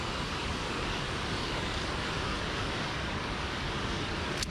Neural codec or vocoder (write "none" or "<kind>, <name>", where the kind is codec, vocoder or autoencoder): codec, DAC